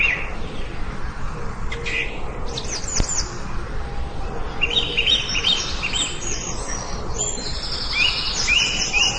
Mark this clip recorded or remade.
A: recorded